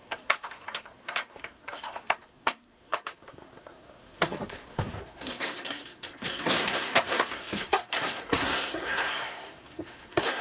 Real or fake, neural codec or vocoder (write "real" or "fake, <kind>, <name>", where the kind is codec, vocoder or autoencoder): fake, codec, SNAC